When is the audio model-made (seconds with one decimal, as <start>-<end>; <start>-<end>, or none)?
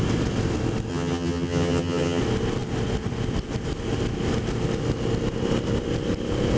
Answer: 0.9-2.2